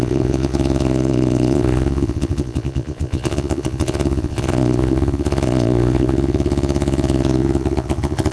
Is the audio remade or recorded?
remade